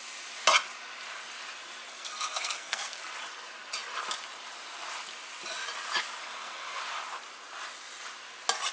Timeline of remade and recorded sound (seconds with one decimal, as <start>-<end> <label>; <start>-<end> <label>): 0.0-1.9 recorded; 1.9-3.0 remade; 3.0-6.2 recorded; 6.2-6.8 remade; 6.8-8.7 recorded